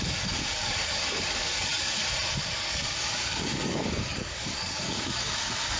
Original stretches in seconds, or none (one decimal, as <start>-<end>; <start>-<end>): 2.0-2.5